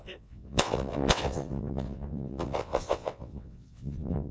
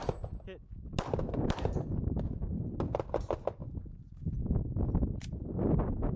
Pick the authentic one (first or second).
second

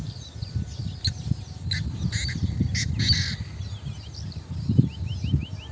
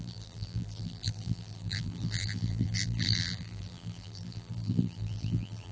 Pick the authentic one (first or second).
first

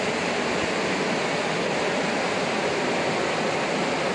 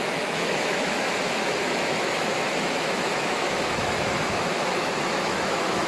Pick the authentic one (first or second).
first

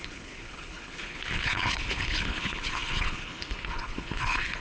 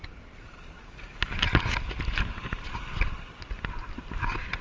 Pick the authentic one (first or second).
second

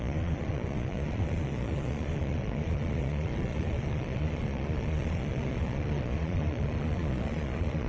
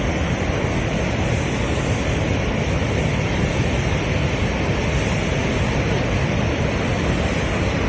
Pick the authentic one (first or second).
second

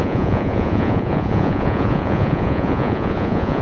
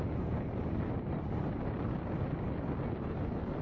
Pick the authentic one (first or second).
second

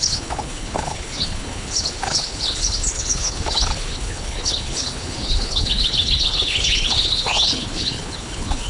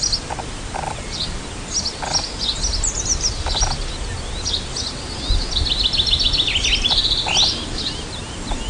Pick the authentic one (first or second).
second